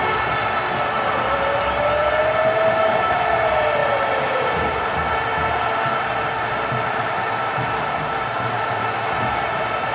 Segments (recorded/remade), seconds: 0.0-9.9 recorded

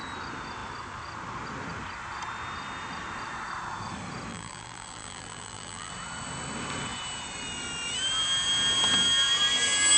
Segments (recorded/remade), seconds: 0.0-4.3 recorded; 4.3-5.9 remade; 5.9-10.0 recorded

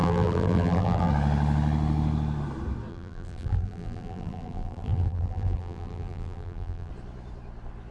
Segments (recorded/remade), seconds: 0.0-1.1 remade; 1.1-2.9 recorded; 2.9-6.9 remade; 6.9-7.9 recorded

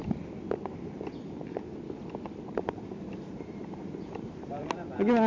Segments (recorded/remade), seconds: 0.0-2.5 recorded; 2.5-4.6 remade; 4.6-5.3 recorded